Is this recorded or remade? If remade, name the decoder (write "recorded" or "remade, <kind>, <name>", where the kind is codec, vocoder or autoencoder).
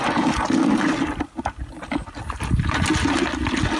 recorded